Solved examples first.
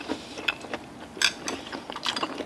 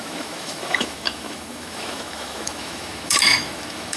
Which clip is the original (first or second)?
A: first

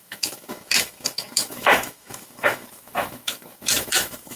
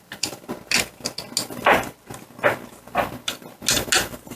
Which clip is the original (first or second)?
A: second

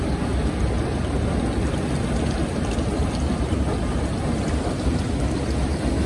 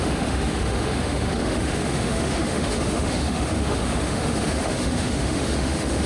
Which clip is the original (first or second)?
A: first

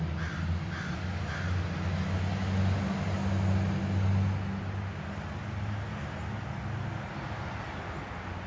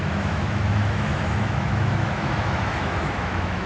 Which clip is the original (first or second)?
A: first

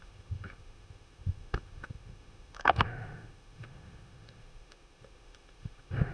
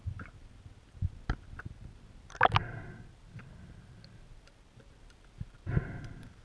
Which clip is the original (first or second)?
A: second